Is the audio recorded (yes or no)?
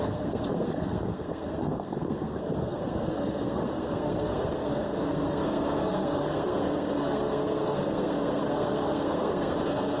no